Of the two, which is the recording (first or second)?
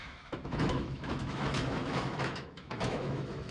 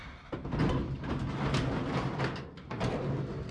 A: second